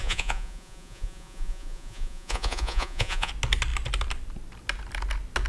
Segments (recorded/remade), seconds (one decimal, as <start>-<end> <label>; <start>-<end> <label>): 0.0-3.3 remade; 3.3-5.5 recorded